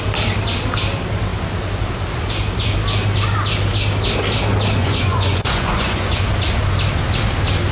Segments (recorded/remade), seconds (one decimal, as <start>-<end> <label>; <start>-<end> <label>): 0.0-4.8 recorded; 4.8-6.3 remade; 6.3-7.7 recorded